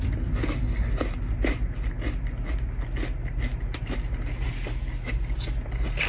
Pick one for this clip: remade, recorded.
recorded